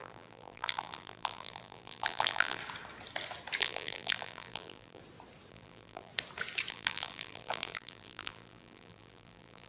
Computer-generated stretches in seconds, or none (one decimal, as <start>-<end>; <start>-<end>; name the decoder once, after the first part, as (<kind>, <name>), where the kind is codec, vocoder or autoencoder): 0.0-2.6 (vocoder, BigVGAN v2); 3.6-5.0; 5.5-6.1; 6.7-9.7